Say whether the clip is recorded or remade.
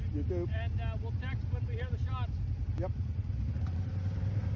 recorded